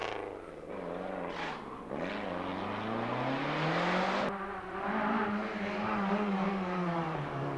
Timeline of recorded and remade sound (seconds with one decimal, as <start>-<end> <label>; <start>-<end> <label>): 0.0-5.4 recorded; 5.4-7.6 remade